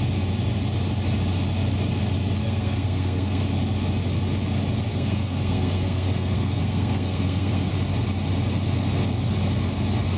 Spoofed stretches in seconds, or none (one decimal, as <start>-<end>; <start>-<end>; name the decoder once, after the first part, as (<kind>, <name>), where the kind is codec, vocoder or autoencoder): 2.4-3.4 (codec, SNAC); 4.9-7.7

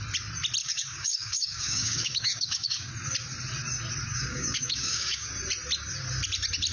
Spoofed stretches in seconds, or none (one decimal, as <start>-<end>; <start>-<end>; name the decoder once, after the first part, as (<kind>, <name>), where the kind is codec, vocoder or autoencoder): 0.6-2.9 (codec, DAC); 4.1-5.3